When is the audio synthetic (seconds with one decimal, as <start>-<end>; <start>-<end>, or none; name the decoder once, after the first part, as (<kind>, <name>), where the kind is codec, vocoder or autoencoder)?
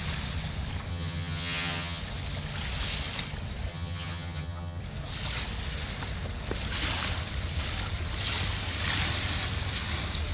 0.9-2.0 (vocoder, HiFi-GAN); 3.7-4.8